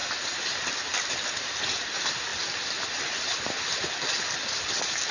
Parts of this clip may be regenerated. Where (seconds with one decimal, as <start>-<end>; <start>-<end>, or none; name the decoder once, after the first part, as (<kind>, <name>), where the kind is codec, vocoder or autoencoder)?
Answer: none